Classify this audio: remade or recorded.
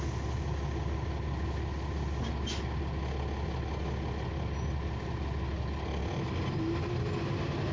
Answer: recorded